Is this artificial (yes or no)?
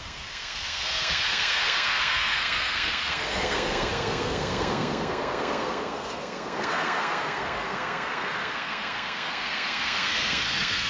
yes